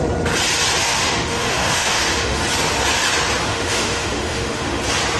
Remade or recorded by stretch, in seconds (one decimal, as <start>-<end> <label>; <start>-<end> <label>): 0.0-0.8 recorded; 0.8-2.4 remade; 2.4-3.5 recorded; 3.5-4.8 remade; 4.8-5.2 recorded